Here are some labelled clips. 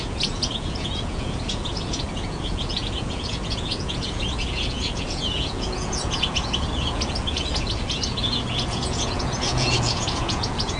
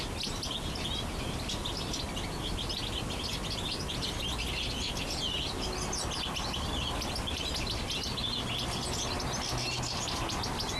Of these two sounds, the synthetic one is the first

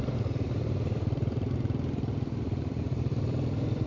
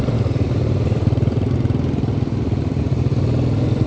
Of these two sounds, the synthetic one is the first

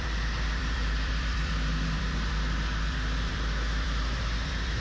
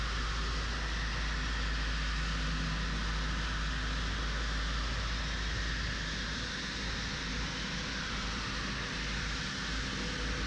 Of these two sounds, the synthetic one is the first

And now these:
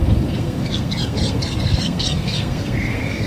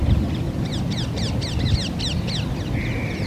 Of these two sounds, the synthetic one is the first